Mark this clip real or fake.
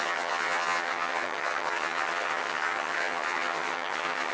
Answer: fake